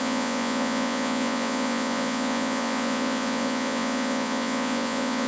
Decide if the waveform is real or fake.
fake